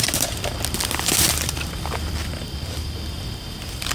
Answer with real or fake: real